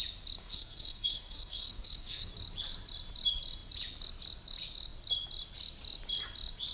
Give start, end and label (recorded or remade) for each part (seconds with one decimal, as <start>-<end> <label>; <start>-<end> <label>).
0.0-0.4 recorded; 0.4-2.3 remade; 2.3-6.7 recorded